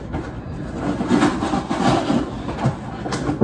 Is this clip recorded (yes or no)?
yes